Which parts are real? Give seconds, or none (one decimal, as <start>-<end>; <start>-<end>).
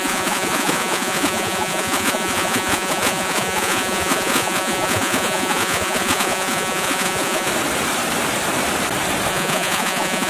7.5-9.3